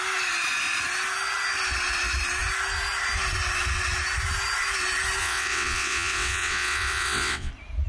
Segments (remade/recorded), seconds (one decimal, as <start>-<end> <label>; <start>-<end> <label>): 0.0-5.2 recorded; 5.2-7.5 remade; 7.5-7.9 recorded